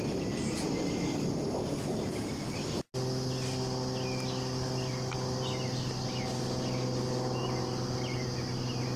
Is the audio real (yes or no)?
yes